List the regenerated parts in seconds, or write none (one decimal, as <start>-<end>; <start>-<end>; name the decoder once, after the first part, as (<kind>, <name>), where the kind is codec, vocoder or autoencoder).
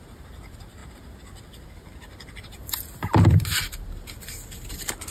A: none